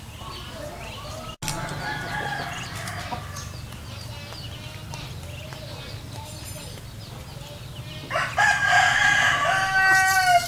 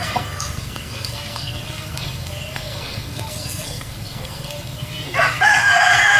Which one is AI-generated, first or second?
second